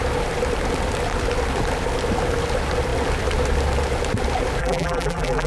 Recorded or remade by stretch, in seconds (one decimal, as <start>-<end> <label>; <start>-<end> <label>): 0.0-4.6 recorded; 4.6-5.5 remade